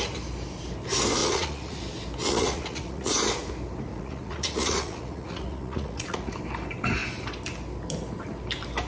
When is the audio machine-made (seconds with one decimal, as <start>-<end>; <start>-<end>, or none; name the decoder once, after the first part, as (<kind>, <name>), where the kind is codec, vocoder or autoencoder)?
1.2-1.8 (vocoder, Vocos); 2.2-3.1; 3.9-6.3